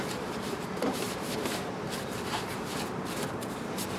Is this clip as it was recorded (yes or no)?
no